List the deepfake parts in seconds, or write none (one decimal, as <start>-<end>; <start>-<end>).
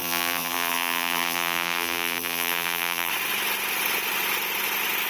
0.0-3.1